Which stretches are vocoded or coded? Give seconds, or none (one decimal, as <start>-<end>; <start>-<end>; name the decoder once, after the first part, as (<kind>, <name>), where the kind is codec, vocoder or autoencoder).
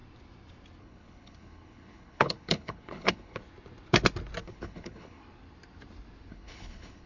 0.8-3.4 (codec, HILCodec); 4.4-5.2; 6.3-7.1